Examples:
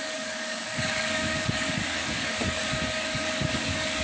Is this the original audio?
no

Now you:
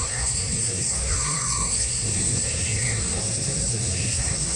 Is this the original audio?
no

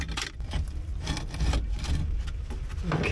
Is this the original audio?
yes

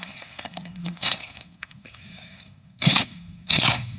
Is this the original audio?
no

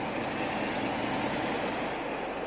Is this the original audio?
yes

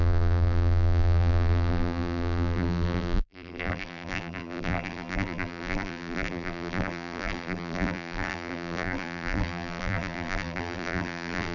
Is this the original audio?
no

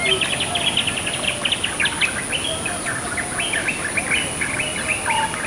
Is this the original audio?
yes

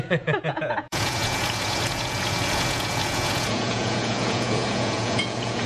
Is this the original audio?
no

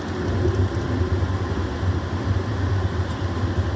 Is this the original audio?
yes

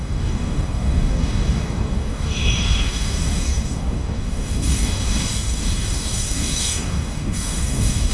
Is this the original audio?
no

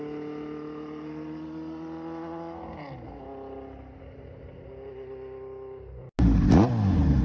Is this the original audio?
yes